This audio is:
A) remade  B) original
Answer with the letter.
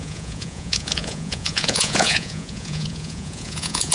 A